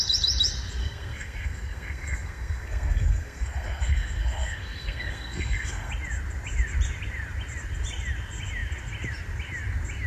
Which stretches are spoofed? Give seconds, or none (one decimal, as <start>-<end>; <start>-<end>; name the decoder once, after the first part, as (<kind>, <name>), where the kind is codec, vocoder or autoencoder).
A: 0.8-5.9 (codec, SNAC)